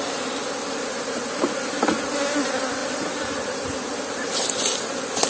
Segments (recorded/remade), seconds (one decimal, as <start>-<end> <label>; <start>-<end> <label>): 0.0-2.8 recorded; 2.8-4.5 remade; 4.5-5.3 recorded